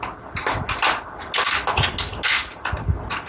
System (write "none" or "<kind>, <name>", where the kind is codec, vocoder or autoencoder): none